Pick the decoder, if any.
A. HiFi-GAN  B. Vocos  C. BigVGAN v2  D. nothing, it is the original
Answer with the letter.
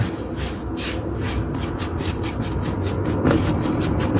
D